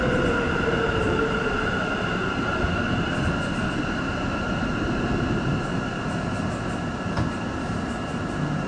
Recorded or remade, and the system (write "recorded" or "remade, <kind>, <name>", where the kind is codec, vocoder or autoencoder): remade, vocoder, BigVGAN v2